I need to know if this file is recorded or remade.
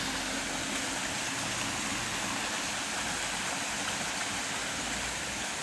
recorded